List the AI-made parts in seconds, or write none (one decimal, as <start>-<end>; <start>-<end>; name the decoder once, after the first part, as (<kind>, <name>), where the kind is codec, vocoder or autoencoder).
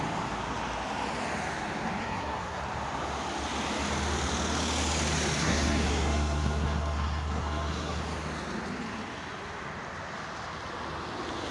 2.0-2.6 (codec, SNAC); 5.4-8.0